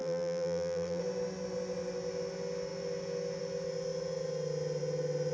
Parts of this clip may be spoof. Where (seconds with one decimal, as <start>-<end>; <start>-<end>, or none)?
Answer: 0.0-1.0